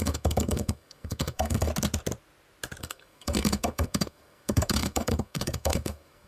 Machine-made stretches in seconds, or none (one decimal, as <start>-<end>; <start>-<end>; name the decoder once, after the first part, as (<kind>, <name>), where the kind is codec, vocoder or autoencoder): 0.0-1.7 (codec, SNAC); 2.8-6.3